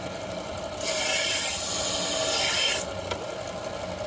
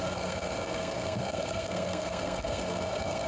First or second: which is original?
first